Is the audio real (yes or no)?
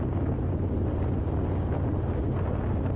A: yes